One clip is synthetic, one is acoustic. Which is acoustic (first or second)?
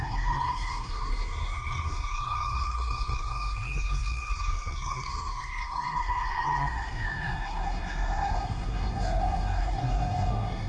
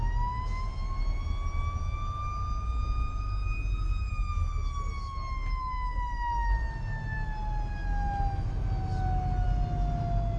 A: second